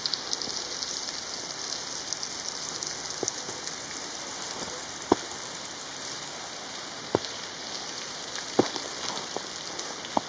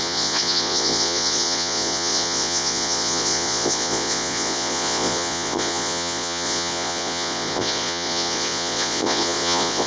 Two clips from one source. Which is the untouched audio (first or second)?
first